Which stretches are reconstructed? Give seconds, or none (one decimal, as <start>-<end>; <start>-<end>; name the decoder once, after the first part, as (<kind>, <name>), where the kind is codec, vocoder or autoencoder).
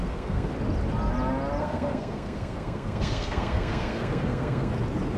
0.0-0.5 (codec, SNAC); 1.6-4.7